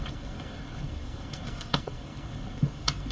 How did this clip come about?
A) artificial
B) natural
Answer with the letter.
A